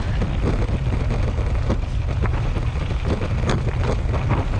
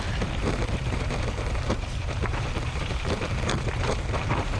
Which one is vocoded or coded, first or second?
second